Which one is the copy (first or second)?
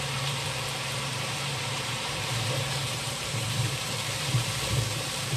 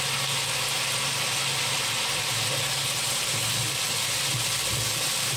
first